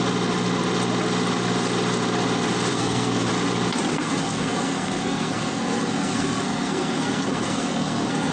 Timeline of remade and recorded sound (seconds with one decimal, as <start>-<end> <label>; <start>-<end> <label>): 0.0-2.7 recorded; 2.7-3.3 remade; 3.3-3.9 recorded; 3.9-8.3 remade